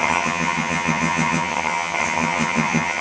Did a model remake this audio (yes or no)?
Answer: yes